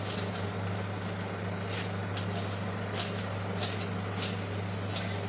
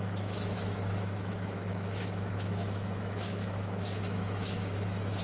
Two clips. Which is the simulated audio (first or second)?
second